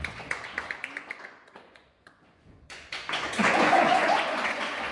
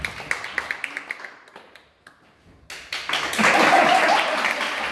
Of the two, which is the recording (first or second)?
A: second